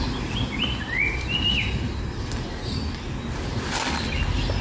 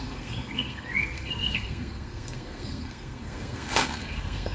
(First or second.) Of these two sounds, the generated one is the second